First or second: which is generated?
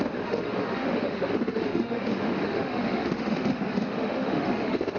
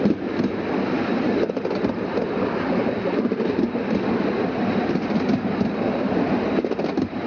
first